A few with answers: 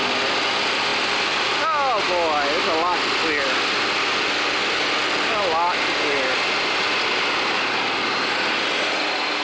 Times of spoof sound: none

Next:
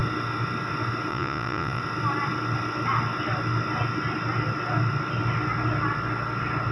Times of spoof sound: 1.1-1.8 (vocoder, Vocos)

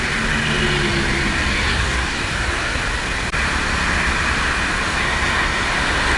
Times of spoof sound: 1.7-2.8 (codec, SNAC); 4.9-5.6